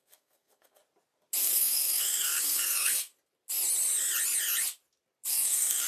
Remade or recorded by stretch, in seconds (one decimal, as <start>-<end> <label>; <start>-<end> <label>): 0.0-0.8 remade; 0.8-1.4 recorded; 1.4-3.1 remade; 3.1-5.3 recorded; 5.3-5.9 remade